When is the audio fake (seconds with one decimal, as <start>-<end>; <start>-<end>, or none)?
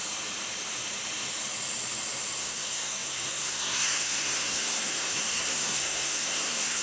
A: 2.4-6.8